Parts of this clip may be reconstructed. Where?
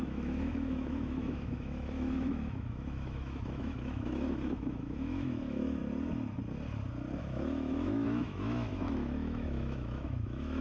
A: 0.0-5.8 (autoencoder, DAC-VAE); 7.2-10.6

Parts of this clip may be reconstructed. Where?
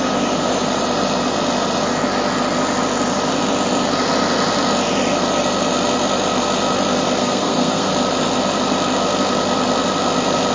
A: 7.2-7.9 (codec, SNAC)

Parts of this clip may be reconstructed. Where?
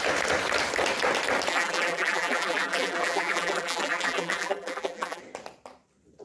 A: 1.5-5.2 (vocoder, BigVGAN v2)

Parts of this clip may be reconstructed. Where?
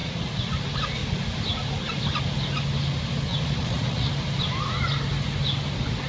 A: 0.0-0.5 (vocoder, Vocos); 3.3-4.1